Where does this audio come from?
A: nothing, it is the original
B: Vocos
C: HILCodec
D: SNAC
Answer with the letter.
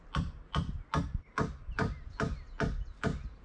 A